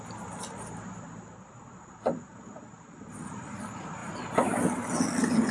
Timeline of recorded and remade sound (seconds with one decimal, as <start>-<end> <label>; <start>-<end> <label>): 0.0-5.5 recorded